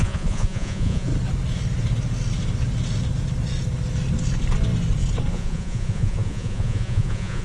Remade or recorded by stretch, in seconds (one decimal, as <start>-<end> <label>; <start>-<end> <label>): 0.0-1.1 remade; 1.1-5.3 recorded; 5.3-7.4 remade